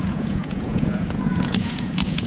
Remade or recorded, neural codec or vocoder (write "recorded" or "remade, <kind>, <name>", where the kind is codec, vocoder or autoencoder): remade, vocoder, Vocos